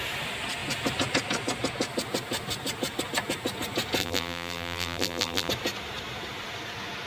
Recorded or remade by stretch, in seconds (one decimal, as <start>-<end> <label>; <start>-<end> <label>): 0.0-4.0 recorded; 4.0-5.5 remade; 5.5-7.1 recorded